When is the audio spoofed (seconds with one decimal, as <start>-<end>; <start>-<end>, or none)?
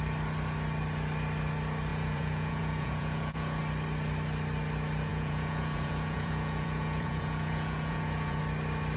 1.9-3.6; 5.1-8.4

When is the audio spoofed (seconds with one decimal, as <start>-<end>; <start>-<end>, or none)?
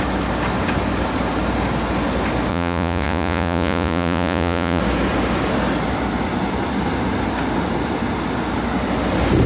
2.5-4.8